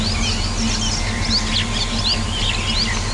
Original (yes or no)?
yes